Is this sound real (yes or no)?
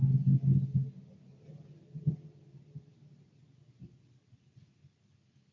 yes